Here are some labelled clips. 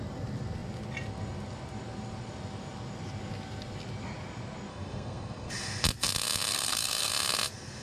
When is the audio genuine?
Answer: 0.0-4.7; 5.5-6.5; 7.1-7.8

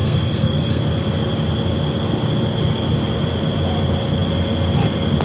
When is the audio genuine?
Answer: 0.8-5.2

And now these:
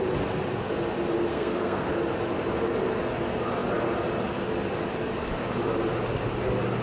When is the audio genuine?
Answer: 0.0-1.3; 1.9-6.8